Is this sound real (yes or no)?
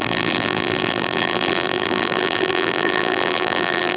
no